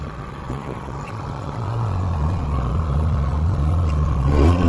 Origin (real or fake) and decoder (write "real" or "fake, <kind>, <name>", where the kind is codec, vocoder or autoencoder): fake, vocoder, Vocos